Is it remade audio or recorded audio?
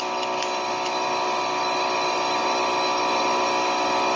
recorded